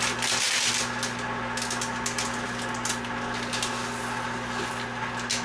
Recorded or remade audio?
recorded